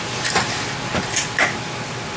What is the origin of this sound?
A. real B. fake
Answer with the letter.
A